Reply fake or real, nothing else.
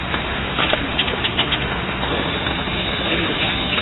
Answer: fake